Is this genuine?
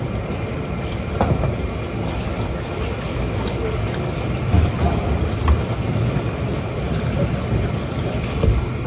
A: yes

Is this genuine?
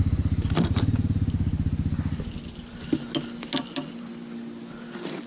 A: yes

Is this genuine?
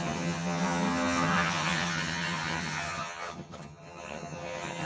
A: no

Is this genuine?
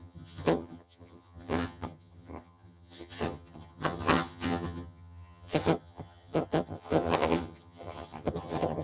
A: no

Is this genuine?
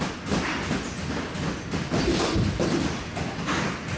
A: yes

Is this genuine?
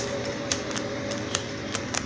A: yes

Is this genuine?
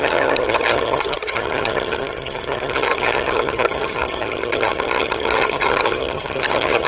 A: no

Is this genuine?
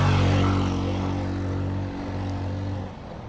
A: yes